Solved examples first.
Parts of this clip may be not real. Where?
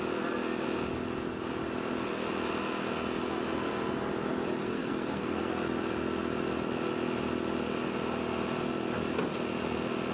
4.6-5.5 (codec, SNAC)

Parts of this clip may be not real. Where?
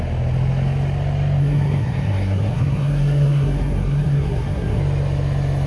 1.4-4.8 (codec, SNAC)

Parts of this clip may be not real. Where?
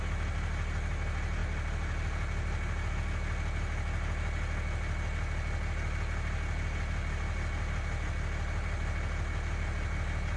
none